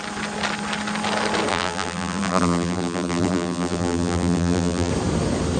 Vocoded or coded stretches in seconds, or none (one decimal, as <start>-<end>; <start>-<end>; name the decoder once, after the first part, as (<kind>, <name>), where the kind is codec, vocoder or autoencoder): 1.5-4.9 (vocoder, BigVGAN v2)